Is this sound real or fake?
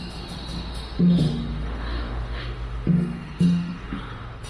fake